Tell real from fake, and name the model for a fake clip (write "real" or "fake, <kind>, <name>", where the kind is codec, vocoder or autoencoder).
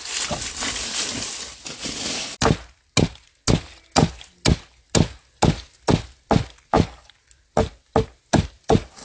real